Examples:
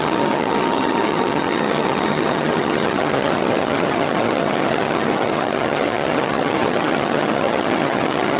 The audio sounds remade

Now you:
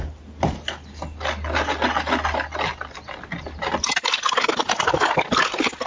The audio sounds recorded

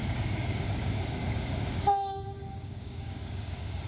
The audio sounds remade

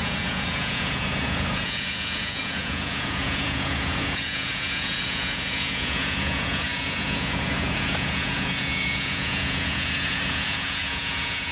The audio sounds remade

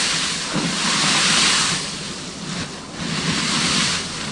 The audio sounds recorded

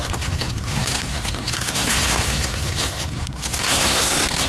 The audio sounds remade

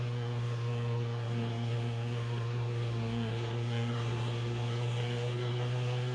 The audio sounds remade